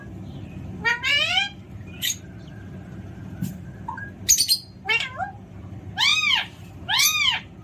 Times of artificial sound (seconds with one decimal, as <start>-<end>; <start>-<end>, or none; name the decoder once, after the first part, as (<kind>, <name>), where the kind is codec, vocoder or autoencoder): 1.3-3.5 (vocoder, BigVGAN v2); 6.1-6.7